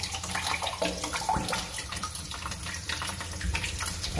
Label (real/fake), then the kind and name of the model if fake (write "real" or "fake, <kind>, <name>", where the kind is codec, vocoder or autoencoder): fake, vocoder, BigVGAN v2